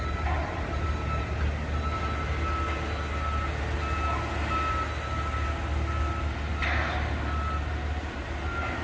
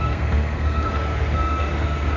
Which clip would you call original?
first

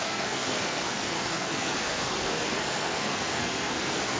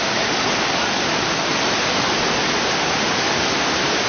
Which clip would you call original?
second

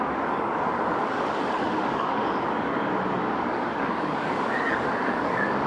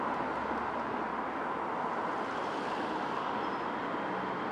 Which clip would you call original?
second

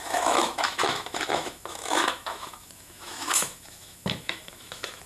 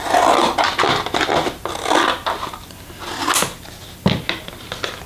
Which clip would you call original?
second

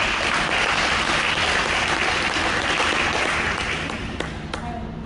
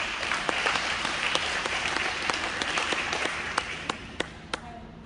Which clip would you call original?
first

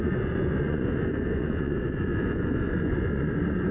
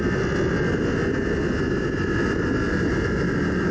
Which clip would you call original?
second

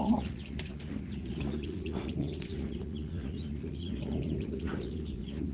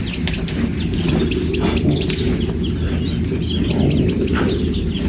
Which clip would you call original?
second